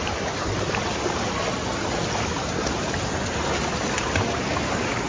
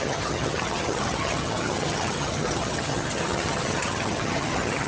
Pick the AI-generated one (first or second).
second